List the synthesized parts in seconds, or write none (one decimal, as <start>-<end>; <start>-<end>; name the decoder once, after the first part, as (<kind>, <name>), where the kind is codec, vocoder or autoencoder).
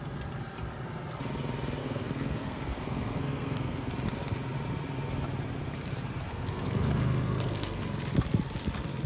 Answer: 1.8-3.9 (codec, SNAC); 6.3-7.8